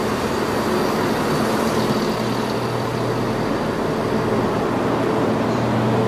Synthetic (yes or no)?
no